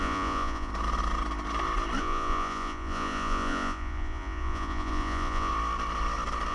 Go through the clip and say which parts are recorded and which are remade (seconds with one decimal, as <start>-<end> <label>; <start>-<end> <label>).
0.0-0.7 remade; 0.7-2.0 recorded; 2.0-5.5 remade; 5.5-6.5 recorded